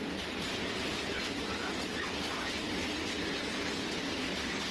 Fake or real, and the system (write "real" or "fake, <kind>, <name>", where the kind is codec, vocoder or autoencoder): real